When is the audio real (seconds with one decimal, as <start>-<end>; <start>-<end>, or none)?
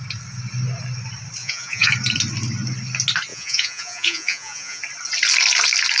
0.0-1.4; 1.9-3.3; 4.8-6.0